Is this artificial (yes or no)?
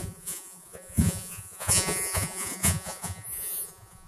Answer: yes